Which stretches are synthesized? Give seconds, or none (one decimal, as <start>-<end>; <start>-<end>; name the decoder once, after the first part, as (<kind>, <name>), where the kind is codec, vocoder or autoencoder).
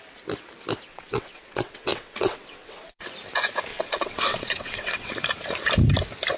0.9-3.0 (vocoder, WaveNeXt); 3.7-5.1